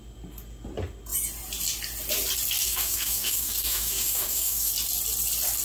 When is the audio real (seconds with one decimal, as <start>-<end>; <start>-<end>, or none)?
0.0-2.6; 4.7-5.6